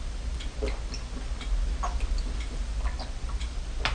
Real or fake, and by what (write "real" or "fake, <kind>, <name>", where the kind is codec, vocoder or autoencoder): real